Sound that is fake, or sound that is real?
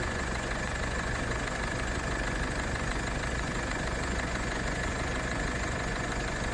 fake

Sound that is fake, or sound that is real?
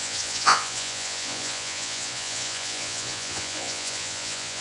fake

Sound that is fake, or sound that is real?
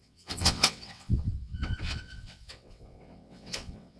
fake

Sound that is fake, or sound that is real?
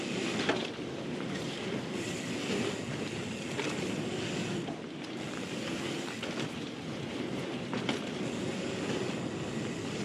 real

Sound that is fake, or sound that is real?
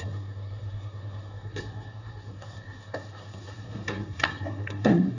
fake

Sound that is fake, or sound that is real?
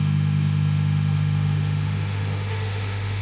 fake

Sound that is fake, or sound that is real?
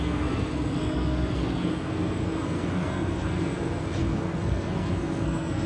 fake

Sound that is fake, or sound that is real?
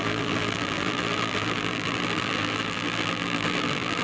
fake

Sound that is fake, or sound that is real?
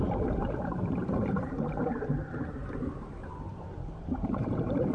fake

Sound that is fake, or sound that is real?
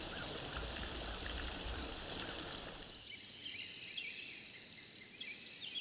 real